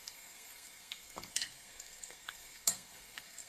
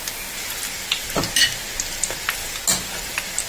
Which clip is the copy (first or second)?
first